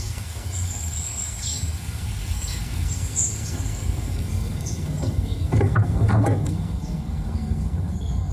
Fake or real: fake